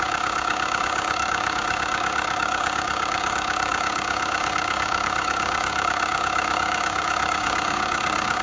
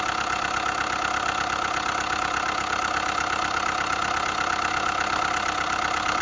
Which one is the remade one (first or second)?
first